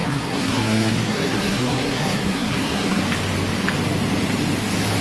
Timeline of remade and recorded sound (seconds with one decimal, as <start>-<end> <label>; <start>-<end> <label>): 0.0-3.0 remade; 3.0-5.0 recorded